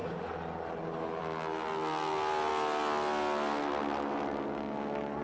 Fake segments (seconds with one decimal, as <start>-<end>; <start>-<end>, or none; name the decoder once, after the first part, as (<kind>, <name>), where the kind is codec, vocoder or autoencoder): none